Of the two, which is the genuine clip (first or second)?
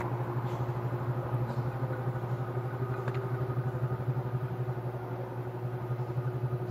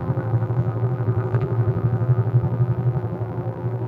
first